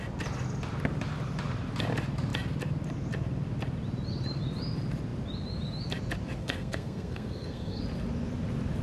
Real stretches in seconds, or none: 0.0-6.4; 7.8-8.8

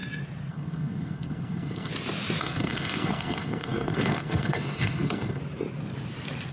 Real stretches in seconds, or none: 0.0-0.5; 1.9-2.4; 5.4-6.5

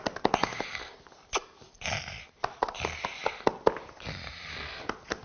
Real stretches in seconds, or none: 0.0-5.2

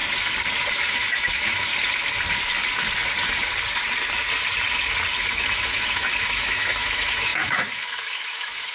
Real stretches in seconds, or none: 0.0-0.7; 1.7-5.2

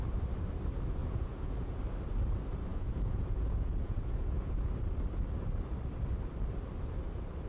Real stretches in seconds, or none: 0.0-1.0; 1.8-2.7; 4.7-7.5

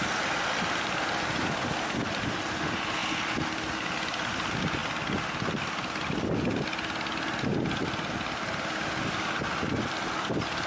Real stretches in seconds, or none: 0.0-10.7